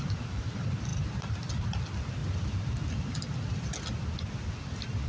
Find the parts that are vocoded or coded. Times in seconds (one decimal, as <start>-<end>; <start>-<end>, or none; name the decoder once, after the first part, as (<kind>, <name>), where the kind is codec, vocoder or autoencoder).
none